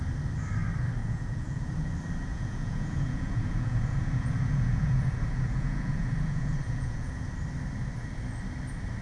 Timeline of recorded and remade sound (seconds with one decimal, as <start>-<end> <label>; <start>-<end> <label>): 0.0-1.0 recorded; 1.0-1.7 remade; 1.7-2.3 recorded; 2.3-7.3 remade; 7.3-9.0 recorded